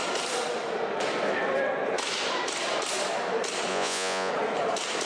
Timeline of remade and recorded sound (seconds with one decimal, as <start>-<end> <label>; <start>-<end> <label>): 0.0-3.7 recorded; 3.7-4.3 remade; 4.3-5.1 recorded